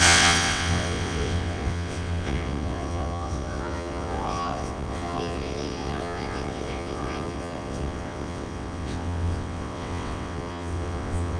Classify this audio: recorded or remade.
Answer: remade